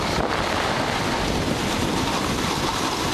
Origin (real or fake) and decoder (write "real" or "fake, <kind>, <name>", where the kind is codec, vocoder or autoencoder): real